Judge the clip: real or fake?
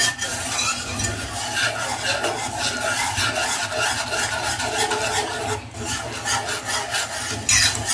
real